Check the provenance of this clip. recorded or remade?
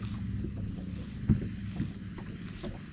recorded